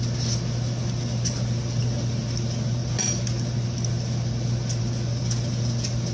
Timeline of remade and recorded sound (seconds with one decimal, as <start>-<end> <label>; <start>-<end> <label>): 0.0-6.1 recorded

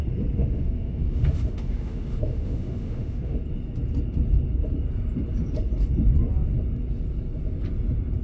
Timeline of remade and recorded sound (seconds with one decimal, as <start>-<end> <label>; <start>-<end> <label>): 0.0-0.4 recorded; 0.4-3.4 remade; 3.4-8.2 recorded

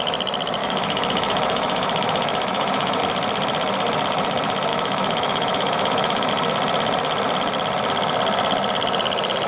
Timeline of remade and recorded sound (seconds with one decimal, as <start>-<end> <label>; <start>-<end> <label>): 0.0-0.6 recorded; 0.6-3.0 remade; 3.0-4.7 recorded; 4.7-6.3 remade; 6.3-9.5 recorded

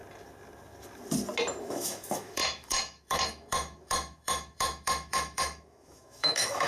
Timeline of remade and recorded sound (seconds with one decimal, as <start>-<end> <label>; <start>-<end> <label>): 0.0-1.6 recorded; 1.6-6.7 remade

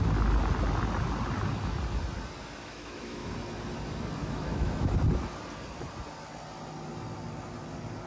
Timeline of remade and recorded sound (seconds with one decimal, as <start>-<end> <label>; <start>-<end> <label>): 0.0-2.6 recorded; 2.6-3.3 remade; 3.3-4.2 recorded; 4.2-4.9 remade; 4.9-8.1 recorded